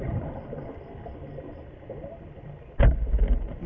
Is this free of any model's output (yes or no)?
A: yes